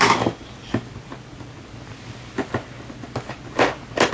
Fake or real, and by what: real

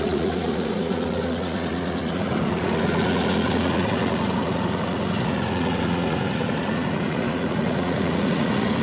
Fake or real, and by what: fake, vocoder, Vocos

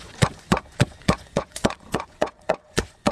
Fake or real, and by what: fake, vocoder, Vocos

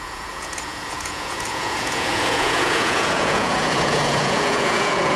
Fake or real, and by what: fake, vocoder, Vocos